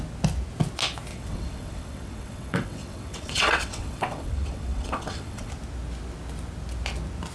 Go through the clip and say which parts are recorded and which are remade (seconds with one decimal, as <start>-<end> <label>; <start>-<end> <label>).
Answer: 0.0-1.1 recorded; 1.1-5.5 remade; 5.5-7.3 recorded